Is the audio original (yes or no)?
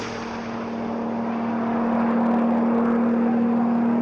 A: yes